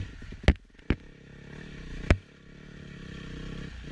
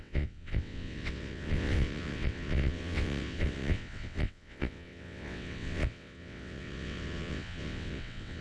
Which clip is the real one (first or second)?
first